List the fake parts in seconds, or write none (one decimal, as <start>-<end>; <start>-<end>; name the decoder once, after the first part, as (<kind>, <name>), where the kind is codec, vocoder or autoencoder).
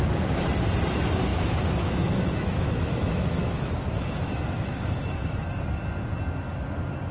1.3-5.6 (autoencoder, DAC-VAE)